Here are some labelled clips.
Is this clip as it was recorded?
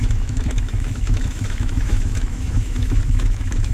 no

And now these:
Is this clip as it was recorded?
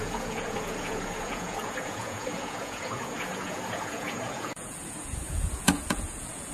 no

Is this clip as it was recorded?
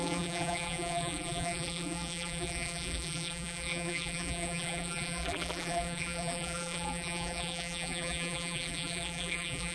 no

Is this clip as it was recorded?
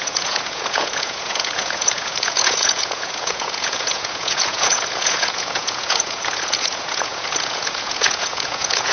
no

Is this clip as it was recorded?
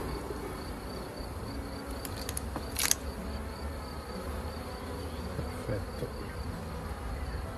yes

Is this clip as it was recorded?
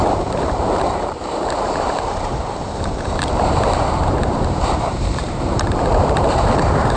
no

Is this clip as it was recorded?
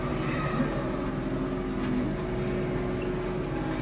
yes